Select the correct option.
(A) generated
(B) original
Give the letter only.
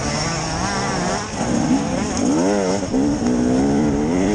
B